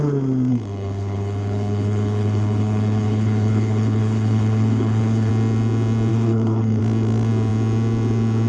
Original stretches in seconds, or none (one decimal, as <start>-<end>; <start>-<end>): 0.0-0.5; 5.3-6.1; 6.8-8.5